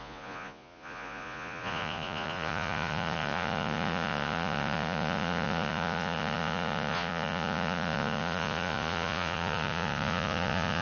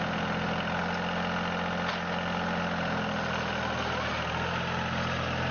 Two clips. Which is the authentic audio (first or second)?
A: second